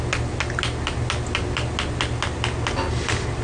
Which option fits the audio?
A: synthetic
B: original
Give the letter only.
B